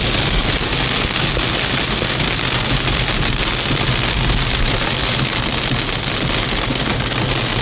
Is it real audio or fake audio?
real